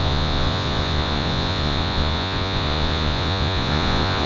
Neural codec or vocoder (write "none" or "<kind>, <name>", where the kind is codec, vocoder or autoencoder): vocoder, Vocos